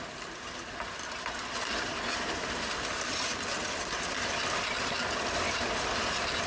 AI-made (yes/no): no